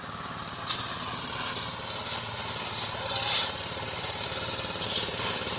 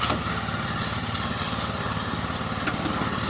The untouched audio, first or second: second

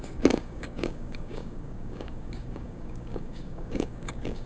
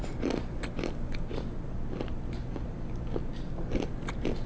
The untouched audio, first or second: second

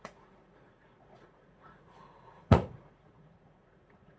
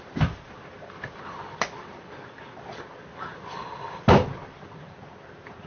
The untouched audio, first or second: second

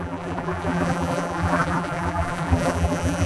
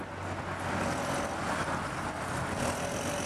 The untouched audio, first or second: second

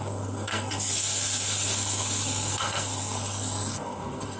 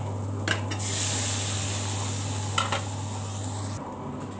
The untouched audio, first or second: second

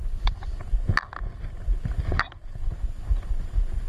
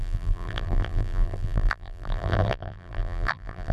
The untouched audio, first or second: first